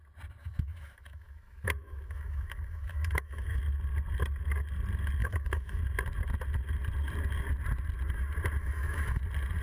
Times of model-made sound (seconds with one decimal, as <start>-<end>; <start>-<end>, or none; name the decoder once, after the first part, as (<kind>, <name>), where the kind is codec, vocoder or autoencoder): 0.4-3.6 (autoencoder, DAC-VAE); 5.2-5.8; 8.6-9.2